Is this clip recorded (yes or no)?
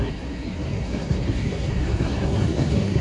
no